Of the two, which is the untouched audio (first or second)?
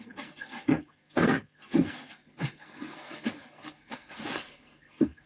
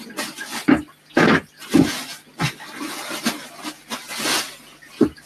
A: second